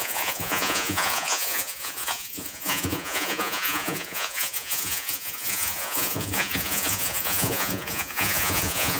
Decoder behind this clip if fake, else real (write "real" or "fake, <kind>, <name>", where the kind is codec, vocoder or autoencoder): fake, vocoder, Vocos